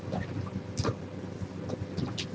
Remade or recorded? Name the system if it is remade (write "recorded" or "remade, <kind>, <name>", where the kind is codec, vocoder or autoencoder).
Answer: recorded